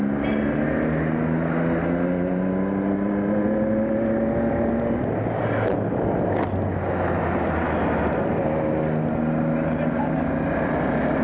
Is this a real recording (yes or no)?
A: yes